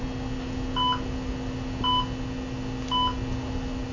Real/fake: real